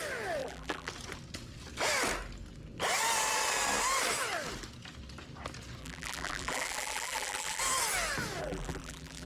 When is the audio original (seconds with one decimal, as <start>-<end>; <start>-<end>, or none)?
0.0-0.4; 0.9-5.8; 7.6-8.4